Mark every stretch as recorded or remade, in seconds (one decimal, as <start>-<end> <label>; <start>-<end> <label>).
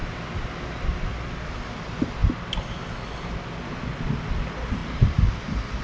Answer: 0.0-4.8 recorded; 4.8-5.8 remade